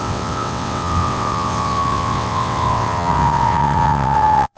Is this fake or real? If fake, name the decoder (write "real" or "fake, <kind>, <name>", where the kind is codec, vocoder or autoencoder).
fake, vocoder, WaveNeXt